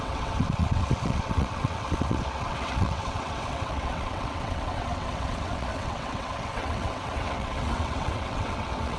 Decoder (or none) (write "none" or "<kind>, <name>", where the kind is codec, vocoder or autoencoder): vocoder, WaveNeXt